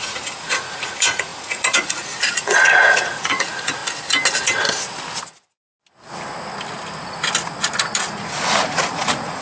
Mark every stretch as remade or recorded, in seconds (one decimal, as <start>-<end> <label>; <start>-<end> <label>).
0.0-3.8 remade; 3.8-8.0 recorded; 8.0-9.4 remade